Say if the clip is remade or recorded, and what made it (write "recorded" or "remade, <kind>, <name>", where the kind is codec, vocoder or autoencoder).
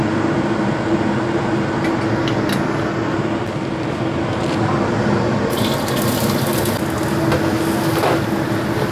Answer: recorded